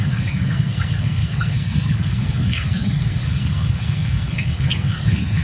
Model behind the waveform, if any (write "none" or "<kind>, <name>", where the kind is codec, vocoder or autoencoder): codec, SNAC